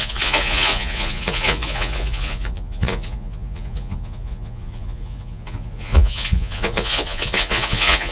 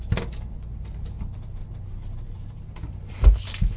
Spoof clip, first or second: first